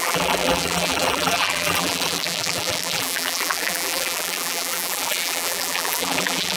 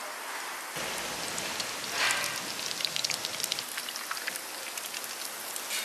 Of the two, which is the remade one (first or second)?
first